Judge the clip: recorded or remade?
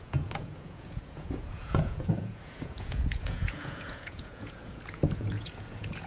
remade